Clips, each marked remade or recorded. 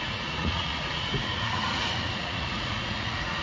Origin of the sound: remade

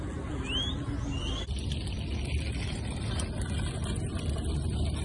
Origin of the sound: recorded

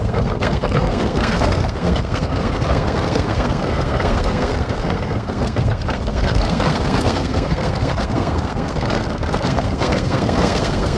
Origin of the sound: remade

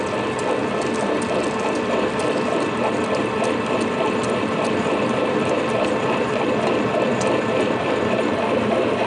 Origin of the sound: recorded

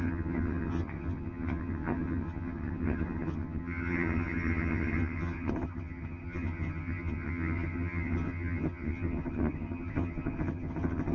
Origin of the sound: remade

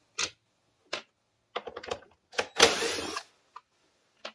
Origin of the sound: recorded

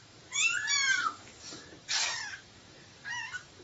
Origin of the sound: remade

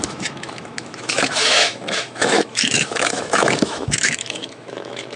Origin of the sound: remade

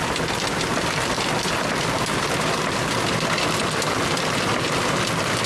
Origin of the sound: remade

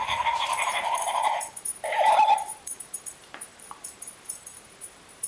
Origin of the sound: remade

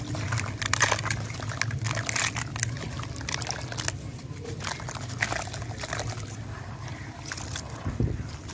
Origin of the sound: recorded